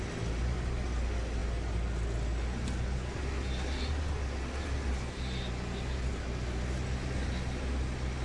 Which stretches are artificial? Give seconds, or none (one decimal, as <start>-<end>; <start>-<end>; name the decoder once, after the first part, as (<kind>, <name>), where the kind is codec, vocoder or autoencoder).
none